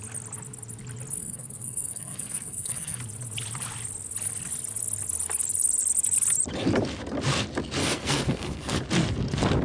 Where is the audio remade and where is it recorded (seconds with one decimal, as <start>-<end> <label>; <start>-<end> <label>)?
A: 0.0-1.2 recorded; 1.2-3.0 remade; 3.0-7.8 recorded; 7.8-8.8 remade; 8.8-9.6 recorded